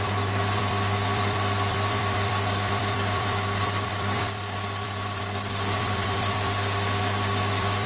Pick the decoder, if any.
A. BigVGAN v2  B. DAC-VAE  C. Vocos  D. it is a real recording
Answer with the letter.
A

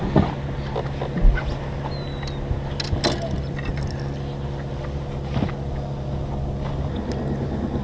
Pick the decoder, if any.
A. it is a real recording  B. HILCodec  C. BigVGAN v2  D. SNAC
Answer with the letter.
A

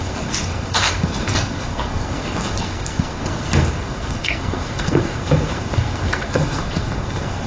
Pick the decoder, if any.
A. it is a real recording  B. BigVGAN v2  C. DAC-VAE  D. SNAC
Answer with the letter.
D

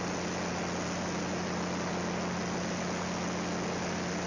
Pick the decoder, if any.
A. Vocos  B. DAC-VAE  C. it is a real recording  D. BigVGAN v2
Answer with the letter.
C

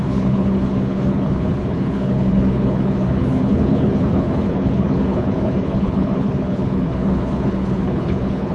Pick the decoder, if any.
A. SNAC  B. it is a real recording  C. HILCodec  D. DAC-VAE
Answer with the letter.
C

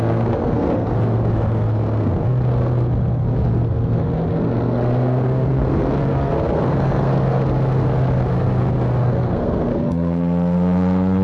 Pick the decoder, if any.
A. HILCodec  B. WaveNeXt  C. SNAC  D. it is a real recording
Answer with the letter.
C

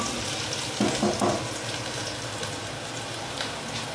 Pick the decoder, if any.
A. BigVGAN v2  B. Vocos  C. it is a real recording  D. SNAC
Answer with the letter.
C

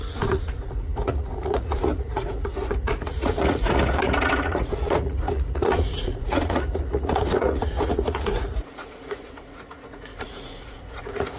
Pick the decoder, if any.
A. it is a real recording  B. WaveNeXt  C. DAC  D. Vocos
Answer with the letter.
D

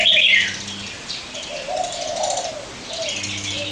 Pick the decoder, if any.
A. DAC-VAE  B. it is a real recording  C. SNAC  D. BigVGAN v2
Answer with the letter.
D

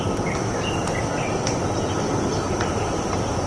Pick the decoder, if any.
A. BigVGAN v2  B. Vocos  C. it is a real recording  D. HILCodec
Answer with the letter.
C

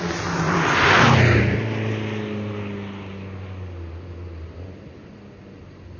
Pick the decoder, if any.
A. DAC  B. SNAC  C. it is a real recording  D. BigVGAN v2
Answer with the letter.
C